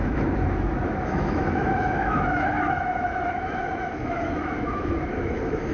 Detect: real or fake fake